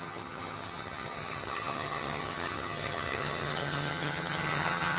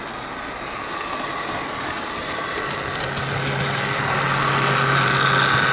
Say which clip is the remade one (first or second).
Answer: first